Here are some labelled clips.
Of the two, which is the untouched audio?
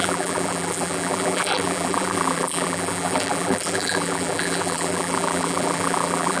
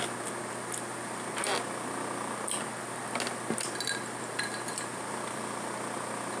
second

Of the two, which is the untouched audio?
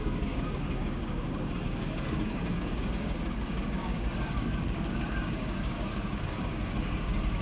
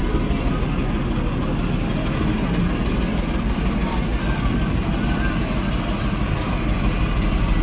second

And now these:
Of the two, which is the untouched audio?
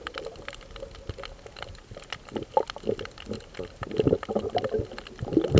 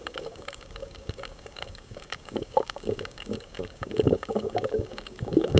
first